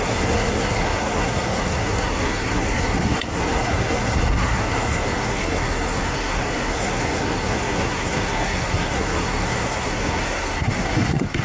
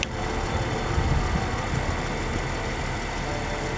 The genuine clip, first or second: second